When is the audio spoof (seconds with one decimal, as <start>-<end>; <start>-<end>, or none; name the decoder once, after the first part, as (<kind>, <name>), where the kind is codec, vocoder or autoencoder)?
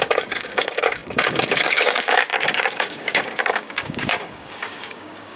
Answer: 0.0-5.4 (codec, DAC)